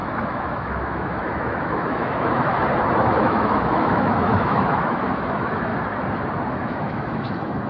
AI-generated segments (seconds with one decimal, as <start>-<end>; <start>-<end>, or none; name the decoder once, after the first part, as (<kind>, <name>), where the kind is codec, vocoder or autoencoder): 0.0-2.5 (autoencoder, DAC-VAE); 3.2-5.7; 6.5-7.7